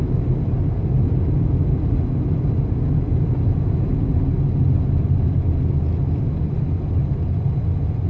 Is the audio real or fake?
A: real